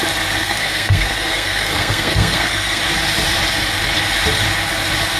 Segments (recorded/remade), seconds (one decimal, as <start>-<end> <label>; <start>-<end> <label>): 0.0-0.4 recorded; 0.4-2.8 remade; 2.8-5.2 recorded